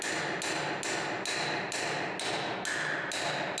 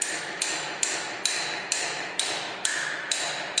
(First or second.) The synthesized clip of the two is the second